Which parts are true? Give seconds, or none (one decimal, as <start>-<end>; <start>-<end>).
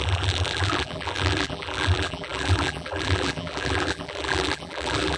none